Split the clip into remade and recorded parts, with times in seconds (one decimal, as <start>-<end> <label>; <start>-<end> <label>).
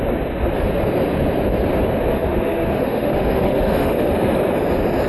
0.0-2.1 recorded; 2.1-4.1 remade; 4.1-5.1 recorded